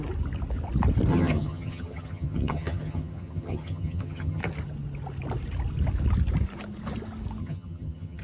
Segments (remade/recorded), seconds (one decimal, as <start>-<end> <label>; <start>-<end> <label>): 0.0-1.1 recorded; 1.1-4.4 remade; 4.4-7.4 recorded; 7.4-8.2 remade